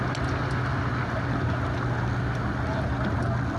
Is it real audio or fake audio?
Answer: real